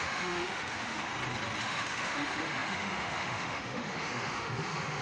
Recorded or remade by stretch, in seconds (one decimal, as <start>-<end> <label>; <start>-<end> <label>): 0.0-1.1 remade; 1.1-1.6 recorded; 1.6-5.0 remade